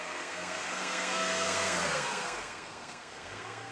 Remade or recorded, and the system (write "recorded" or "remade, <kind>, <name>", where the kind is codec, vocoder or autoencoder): remade, codec, SNAC